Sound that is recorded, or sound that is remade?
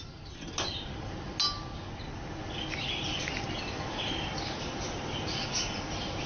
recorded